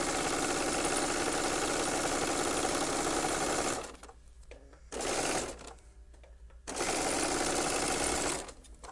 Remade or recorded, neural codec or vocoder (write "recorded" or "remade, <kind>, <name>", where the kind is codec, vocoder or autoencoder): recorded